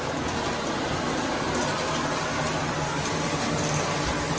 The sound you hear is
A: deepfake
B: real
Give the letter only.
B